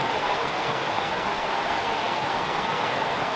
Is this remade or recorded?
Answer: remade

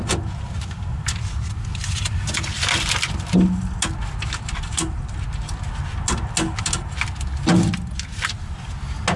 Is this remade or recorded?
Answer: recorded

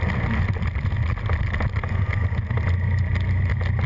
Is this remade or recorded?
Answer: recorded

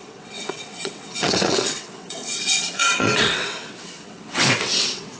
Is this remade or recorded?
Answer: remade